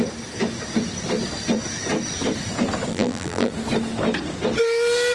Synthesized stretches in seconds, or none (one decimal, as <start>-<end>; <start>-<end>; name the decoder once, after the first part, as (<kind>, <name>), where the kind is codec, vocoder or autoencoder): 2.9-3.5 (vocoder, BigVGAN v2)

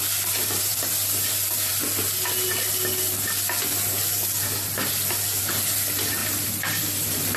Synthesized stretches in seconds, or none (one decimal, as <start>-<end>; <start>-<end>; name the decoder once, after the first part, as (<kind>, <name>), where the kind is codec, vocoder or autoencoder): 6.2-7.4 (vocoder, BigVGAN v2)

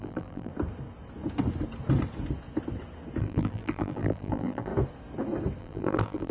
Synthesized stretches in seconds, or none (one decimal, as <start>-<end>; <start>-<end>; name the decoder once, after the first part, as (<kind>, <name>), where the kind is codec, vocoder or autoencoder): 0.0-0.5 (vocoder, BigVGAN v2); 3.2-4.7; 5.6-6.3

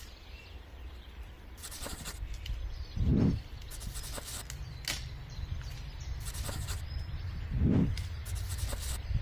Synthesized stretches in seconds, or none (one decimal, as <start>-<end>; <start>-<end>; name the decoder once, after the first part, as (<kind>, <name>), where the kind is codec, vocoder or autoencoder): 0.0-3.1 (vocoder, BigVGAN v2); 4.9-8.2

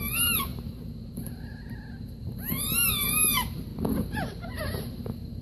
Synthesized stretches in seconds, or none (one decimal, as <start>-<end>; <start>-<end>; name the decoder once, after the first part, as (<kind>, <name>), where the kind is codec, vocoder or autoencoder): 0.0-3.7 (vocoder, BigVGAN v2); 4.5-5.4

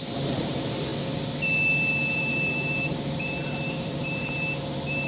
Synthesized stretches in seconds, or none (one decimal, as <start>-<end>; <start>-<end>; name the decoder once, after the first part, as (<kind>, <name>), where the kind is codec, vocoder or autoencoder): 0.0-0.9 (vocoder, BigVGAN v2); 1.9-5.1